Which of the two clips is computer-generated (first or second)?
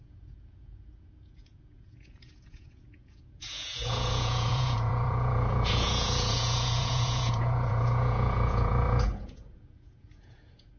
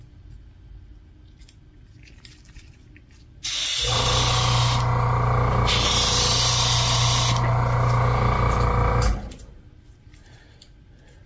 first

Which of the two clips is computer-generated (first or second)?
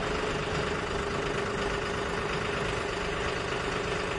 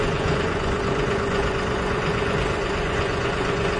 second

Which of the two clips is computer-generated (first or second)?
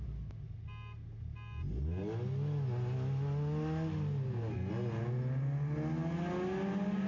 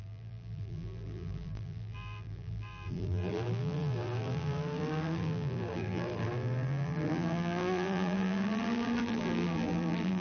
second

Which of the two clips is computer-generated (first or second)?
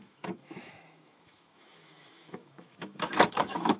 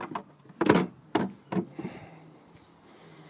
first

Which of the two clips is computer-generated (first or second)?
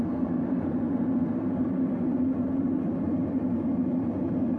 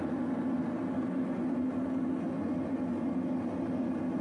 first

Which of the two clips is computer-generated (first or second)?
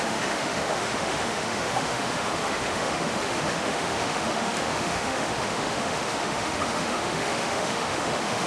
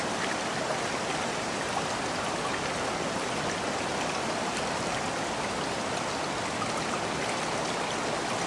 first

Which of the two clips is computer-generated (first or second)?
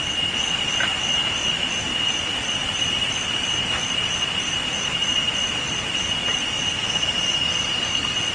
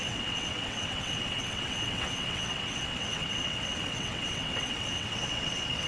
second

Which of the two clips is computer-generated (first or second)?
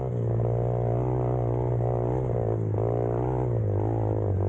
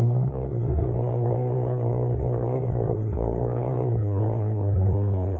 second